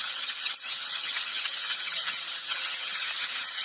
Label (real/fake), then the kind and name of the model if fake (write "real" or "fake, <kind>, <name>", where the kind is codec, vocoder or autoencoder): fake, vocoder, HiFi-GAN